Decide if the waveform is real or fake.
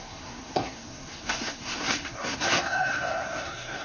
fake